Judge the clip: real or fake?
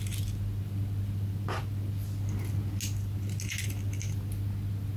real